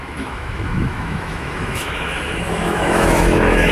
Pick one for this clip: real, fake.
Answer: fake